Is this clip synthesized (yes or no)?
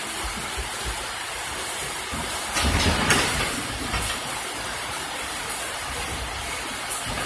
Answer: no